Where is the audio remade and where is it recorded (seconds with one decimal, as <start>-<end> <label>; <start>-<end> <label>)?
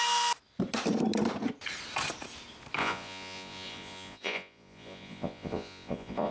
0.0-2.8 recorded; 2.8-6.3 remade